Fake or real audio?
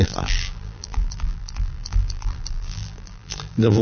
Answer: fake